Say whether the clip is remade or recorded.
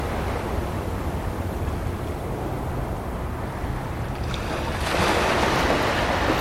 recorded